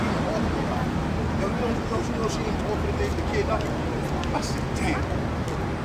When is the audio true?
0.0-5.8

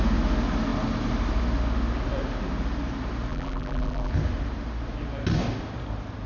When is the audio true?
0.0-3.3; 4.1-6.3

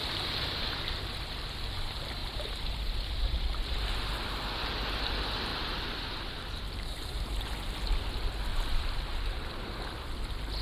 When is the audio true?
0.6-2.2; 3.8-5.5; 7.2-8.5; 9.8-10.6

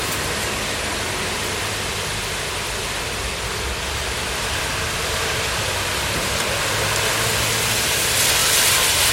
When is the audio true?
0.0-9.1

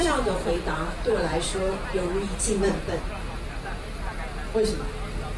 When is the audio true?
3.0-5.4

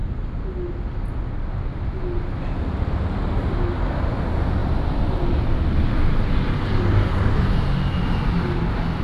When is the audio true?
0.0-9.0

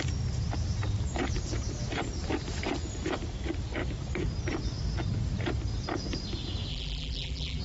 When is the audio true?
0.0-6.7